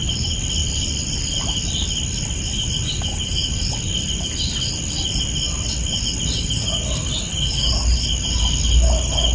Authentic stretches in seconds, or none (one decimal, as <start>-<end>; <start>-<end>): 0.0-0.6; 1.4-9.3